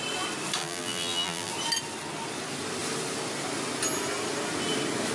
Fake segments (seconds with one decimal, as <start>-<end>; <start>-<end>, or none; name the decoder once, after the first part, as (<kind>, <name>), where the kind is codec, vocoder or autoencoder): 0.6-1.5 (vocoder, BigVGAN v2)